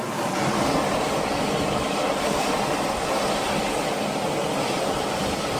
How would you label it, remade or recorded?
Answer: recorded